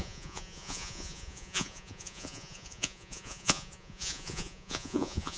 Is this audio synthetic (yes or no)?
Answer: yes